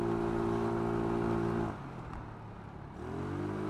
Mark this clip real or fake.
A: real